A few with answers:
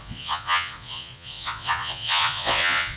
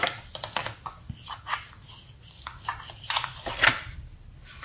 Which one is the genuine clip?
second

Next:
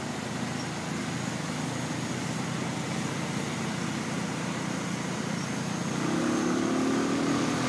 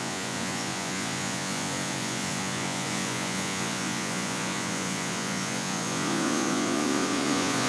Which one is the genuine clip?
first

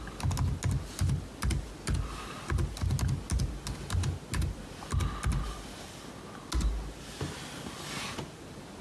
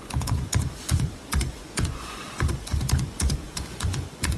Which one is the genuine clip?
first